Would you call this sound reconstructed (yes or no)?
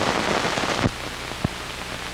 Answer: no